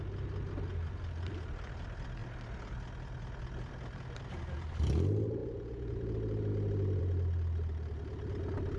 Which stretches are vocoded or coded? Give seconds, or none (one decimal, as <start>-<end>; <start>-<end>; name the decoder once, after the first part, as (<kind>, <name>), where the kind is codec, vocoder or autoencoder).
5.4-6.0 (vocoder, Vocos)